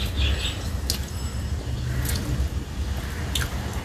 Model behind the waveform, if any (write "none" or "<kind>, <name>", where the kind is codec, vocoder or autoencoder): none